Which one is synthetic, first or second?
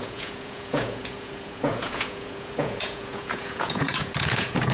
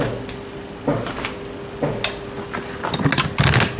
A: first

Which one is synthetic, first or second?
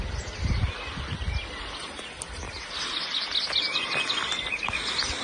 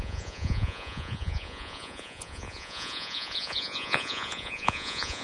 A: second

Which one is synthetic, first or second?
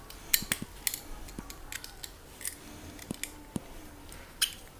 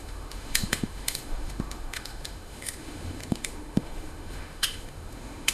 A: second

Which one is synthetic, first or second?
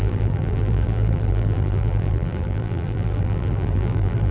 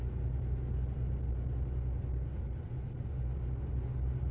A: first